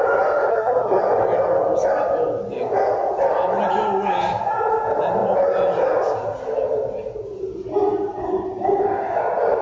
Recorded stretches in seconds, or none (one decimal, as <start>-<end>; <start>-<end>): 0.0-0.5; 1.0-9.6